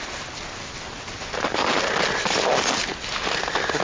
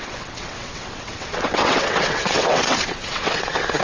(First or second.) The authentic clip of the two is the first